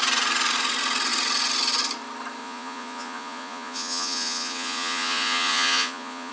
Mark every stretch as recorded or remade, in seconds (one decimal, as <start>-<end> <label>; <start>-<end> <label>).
0.0-2.4 recorded; 2.4-6.3 remade